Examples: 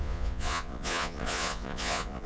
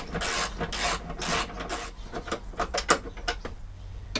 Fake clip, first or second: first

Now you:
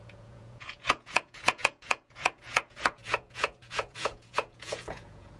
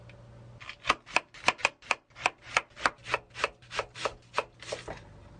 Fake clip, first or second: first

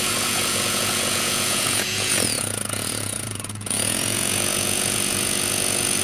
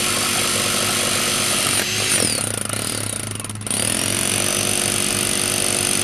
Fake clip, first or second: first